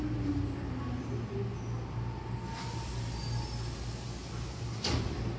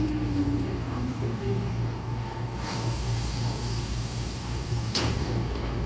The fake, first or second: second